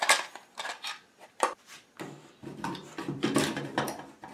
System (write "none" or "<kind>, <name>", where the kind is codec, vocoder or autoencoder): vocoder, BigVGAN v2